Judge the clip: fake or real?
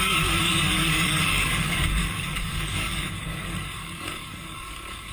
fake